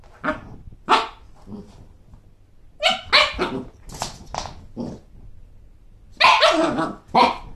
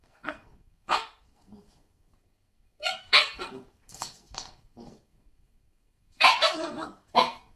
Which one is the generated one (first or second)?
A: second